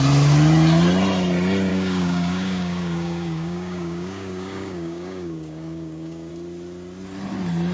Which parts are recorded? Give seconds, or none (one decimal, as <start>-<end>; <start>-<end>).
0.0-1.7; 6.3-7.7